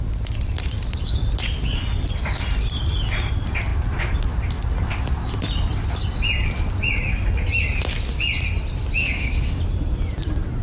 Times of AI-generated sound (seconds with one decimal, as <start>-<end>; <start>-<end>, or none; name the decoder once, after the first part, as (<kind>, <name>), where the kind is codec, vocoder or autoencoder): 9.0-9.6 (autoencoder, DAC-VAE)